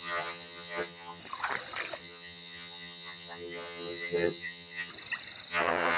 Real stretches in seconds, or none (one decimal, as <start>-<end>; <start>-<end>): 1.2-2.0; 4.9-5.5